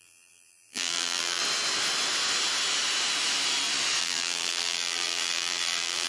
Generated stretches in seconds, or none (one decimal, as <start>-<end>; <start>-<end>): 0.0-1.4; 4.0-6.1